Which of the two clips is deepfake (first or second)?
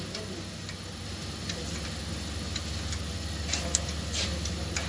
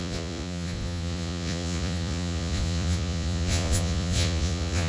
second